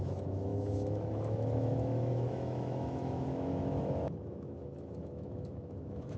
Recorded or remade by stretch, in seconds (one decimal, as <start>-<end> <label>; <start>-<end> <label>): 0.0-6.2 remade